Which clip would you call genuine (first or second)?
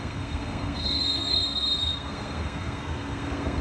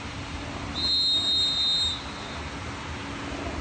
second